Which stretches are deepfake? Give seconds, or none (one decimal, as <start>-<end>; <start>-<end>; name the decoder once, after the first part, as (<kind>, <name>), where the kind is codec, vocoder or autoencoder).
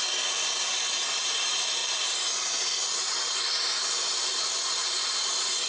1.8-3.4 (vocoder, BigVGAN v2)